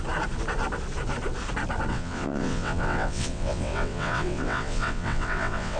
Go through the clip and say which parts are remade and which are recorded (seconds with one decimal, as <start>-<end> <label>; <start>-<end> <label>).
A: 0.0-1.9 recorded; 1.9-5.8 remade